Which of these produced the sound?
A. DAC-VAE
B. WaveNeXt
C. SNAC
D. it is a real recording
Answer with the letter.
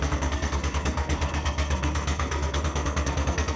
C